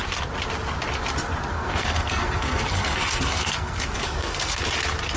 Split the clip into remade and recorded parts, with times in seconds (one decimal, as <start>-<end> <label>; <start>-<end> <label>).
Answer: 0.0-1.5 recorded; 1.5-4.6 remade; 4.6-5.2 recorded